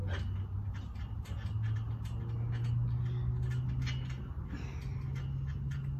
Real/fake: real